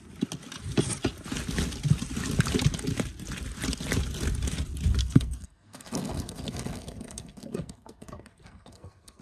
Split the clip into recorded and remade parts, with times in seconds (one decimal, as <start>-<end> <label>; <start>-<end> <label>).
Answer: 0.0-5.0 recorded; 5.0-9.2 remade